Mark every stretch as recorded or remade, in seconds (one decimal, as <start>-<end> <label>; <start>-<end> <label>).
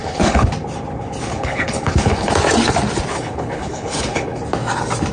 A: 0.0-0.5 remade; 0.5-1.3 recorded; 1.3-2.3 remade; 2.3-3.1 recorded; 3.1-4.4 remade; 4.4-5.1 recorded